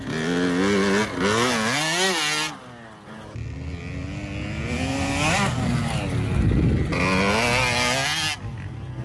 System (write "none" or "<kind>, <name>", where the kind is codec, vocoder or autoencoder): none